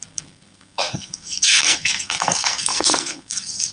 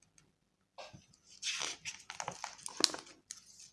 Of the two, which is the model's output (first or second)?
first